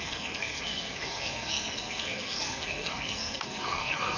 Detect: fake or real fake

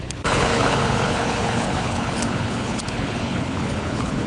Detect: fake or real fake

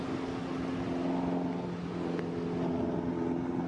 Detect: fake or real real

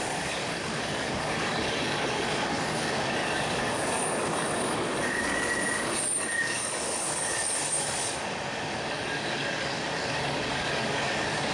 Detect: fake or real fake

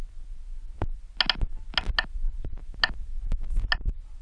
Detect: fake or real real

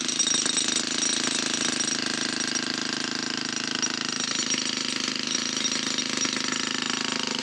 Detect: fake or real real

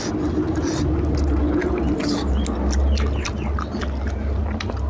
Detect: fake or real real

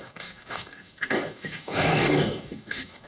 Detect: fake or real fake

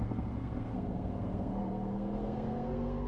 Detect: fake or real fake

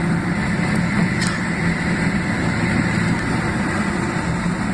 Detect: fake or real real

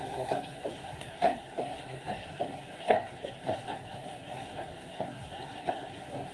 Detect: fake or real fake